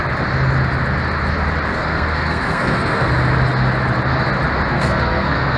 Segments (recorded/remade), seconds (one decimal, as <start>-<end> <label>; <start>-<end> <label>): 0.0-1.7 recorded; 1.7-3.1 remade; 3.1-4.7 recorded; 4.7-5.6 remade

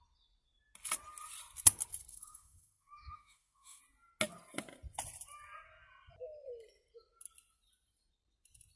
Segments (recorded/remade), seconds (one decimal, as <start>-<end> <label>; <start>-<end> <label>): 0.0-2.1 recorded; 2.1-3.8 remade; 3.8-8.8 recorded

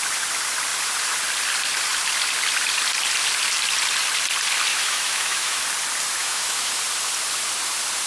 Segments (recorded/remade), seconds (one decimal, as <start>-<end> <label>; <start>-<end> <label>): 0.0-4.7 recorded; 4.7-5.6 remade; 5.6-6.2 recorded; 6.2-6.8 remade; 6.8-8.1 recorded

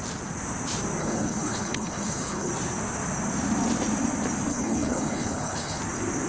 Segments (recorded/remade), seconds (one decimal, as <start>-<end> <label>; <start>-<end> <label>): 0.0-1.0 recorded; 1.0-2.5 remade; 2.5-4.5 recorded; 4.5-5.8 remade; 5.8-6.3 recorded

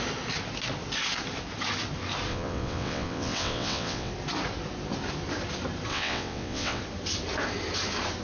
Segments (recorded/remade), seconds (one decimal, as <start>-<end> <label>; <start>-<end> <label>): 0.0-2.3 recorded; 2.3-4.1 remade; 4.1-5.9 recorded; 5.9-6.8 remade; 6.8-8.2 recorded

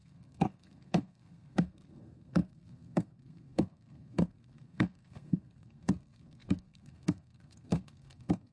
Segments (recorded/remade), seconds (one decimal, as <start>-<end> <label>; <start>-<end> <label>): 0.0-8.5 remade